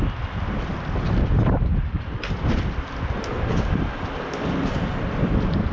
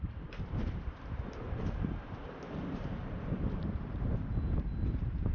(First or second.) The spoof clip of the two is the second